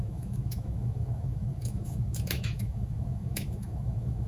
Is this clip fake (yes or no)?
yes